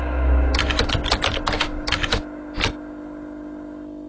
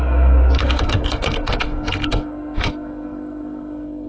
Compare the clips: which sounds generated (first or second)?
second